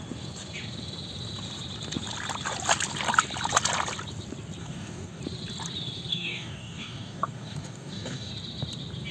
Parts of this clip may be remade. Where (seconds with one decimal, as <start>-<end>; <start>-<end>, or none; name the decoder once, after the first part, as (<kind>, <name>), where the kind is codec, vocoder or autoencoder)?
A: 4.6-5.2 (codec, DAC); 6.1-8.3